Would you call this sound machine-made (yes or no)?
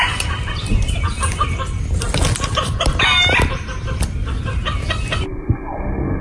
no